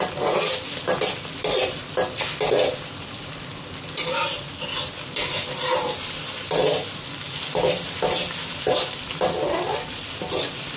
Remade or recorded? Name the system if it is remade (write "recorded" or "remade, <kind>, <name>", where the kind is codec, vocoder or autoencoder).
recorded